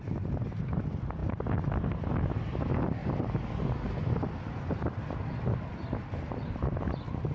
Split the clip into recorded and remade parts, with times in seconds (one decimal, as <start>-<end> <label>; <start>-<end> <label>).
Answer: 0.0-3.0 recorded; 3.0-6.8 remade; 6.8-7.3 recorded